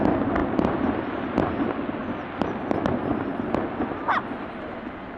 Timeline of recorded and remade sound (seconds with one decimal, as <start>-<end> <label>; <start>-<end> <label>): 0.0-5.2 recorded